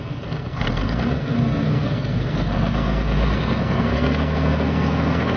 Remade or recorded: remade